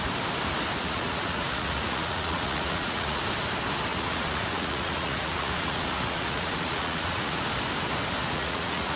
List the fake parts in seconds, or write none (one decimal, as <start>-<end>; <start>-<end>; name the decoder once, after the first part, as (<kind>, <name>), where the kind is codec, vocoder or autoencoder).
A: 0.8-3.2 (vocoder, Vocos); 3.9-7.4; 8.2-9.0